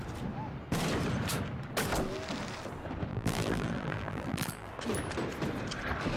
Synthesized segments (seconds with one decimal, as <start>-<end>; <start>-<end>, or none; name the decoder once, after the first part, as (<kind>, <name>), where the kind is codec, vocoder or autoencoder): 3.1-4.7 (vocoder, BigVGAN v2)